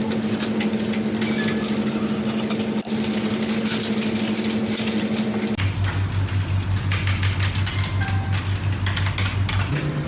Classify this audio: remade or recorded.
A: recorded